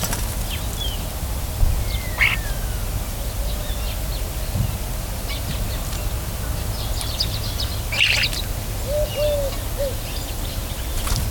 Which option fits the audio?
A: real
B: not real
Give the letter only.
A